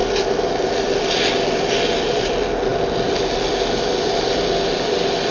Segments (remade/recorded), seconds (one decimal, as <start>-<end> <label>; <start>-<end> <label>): 0.0-5.3 recorded